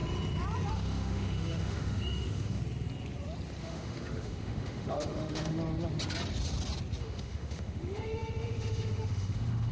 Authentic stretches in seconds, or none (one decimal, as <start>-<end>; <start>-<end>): 0.0-0.7; 2.6-3.6; 5.6-7.0